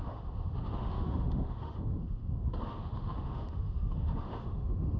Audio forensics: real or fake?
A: fake